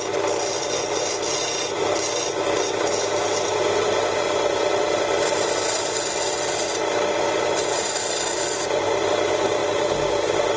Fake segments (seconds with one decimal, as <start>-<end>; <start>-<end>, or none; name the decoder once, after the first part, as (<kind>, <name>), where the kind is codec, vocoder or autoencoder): none